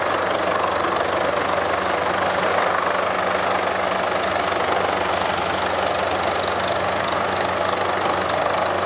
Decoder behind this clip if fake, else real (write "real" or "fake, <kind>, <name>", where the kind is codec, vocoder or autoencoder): real